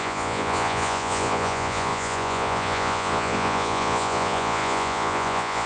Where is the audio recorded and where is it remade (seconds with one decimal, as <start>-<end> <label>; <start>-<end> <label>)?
0.0-5.7 remade